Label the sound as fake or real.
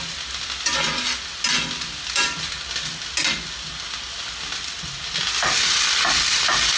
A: real